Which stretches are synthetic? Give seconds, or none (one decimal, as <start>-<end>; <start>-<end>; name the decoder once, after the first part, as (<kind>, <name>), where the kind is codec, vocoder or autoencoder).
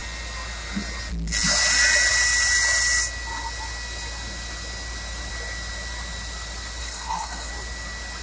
6.8-7.5 (codec, SNAC)